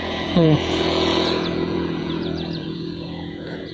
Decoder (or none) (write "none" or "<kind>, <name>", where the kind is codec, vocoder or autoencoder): vocoder, Vocos